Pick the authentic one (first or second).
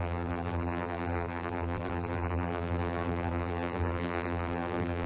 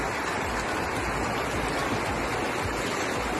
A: second